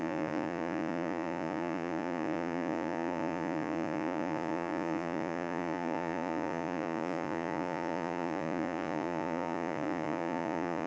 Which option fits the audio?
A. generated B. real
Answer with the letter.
A